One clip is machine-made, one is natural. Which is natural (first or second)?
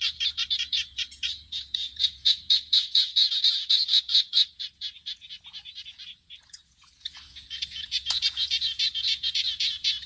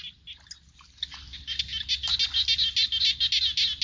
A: second